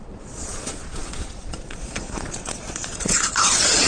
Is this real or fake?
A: fake